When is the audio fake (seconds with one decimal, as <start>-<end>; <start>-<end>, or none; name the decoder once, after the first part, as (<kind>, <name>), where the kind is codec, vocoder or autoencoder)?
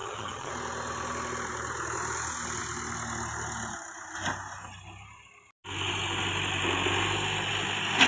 0.0-0.5 (vocoder, HiFi-GAN)